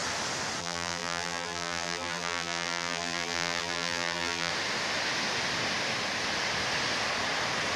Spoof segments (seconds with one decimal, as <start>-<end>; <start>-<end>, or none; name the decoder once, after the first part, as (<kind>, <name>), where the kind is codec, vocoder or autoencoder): 0.6-4.5 (vocoder, BigVGAN v2)